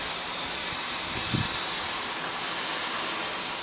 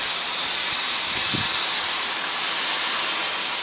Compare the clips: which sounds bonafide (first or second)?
first